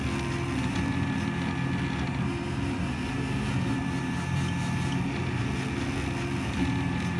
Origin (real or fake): real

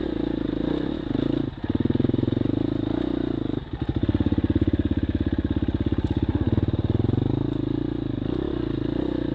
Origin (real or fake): real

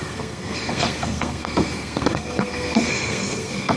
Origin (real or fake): fake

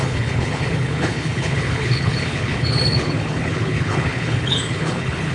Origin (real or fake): fake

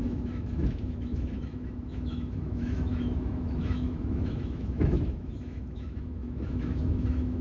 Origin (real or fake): fake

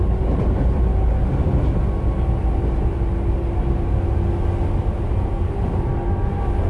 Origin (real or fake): real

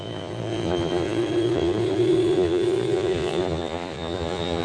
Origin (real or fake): fake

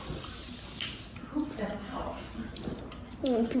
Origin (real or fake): real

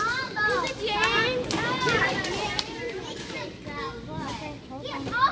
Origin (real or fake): real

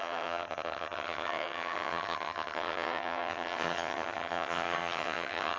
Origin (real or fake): fake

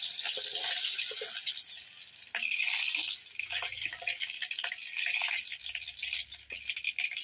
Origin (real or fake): real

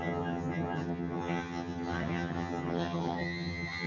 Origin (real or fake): fake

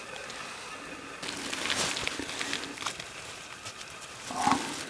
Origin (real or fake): real